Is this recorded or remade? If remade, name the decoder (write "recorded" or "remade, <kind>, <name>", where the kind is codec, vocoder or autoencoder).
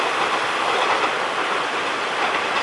recorded